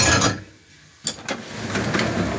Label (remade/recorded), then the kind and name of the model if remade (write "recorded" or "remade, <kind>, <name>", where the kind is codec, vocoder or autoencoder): recorded